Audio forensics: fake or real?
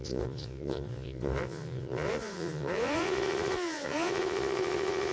fake